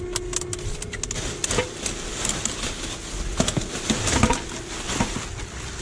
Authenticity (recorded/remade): recorded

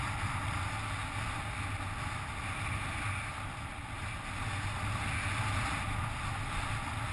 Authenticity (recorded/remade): recorded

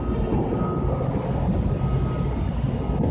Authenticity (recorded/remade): recorded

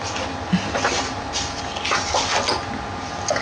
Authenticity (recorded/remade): recorded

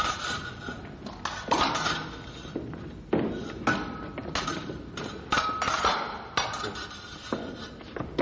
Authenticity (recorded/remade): recorded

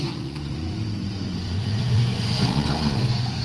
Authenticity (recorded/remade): remade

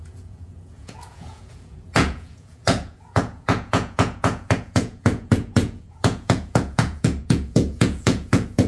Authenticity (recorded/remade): remade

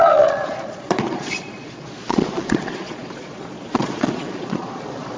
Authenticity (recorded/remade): remade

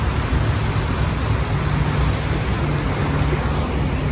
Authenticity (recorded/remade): recorded